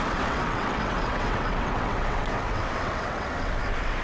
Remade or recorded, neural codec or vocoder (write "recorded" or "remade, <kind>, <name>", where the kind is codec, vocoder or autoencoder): remade, vocoder, WaveNeXt